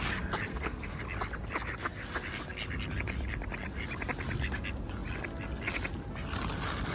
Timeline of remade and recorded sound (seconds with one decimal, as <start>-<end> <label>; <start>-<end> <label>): 0.0-0.5 recorded; 0.5-1.0 remade; 1.0-6.9 recorded